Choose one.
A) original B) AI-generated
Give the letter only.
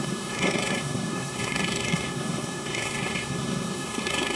B